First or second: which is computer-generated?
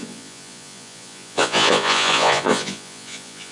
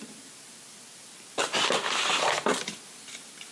first